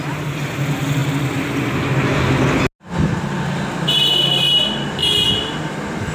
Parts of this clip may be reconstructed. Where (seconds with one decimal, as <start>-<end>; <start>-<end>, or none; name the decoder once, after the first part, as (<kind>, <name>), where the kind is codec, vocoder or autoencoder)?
none